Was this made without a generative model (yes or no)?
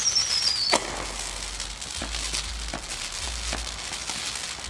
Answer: yes